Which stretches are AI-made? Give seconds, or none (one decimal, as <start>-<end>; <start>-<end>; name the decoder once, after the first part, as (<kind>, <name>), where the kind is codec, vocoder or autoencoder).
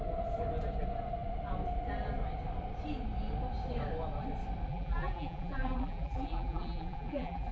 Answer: 4.7-7.5 (vocoder, BigVGAN v2)